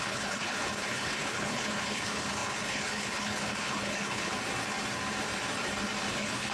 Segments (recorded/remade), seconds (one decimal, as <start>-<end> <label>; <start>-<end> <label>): 0.0-4.3 remade; 4.3-6.1 recorded; 6.1-6.5 remade